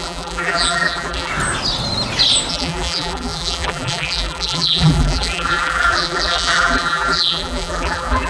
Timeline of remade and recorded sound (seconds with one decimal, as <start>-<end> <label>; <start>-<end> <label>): 0.0-1.3 remade; 1.3-2.5 recorded; 2.5-8.3 remade